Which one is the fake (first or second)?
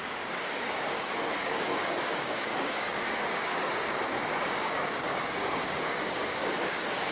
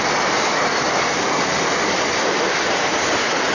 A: first